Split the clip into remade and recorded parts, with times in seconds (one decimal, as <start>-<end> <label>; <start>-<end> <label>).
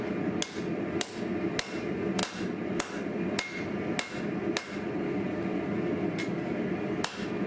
0.0-7.5 recorded